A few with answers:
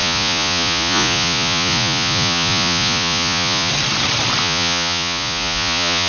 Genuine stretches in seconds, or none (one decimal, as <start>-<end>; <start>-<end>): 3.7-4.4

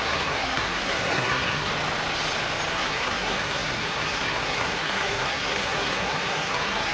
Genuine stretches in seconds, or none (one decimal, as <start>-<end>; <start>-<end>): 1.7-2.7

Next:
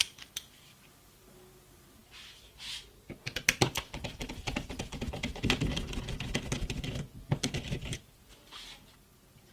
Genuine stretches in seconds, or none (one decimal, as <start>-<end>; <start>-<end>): 0.0-9.5